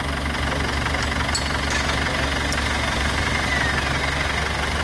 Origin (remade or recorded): recorded